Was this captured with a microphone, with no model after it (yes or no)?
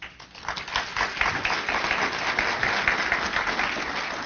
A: yes